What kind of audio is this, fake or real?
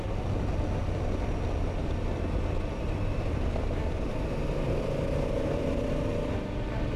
real